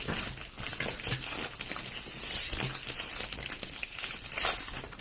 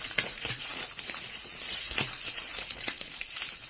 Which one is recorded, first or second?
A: first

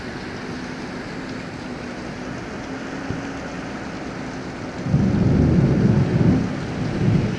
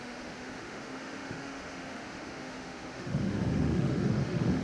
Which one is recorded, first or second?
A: first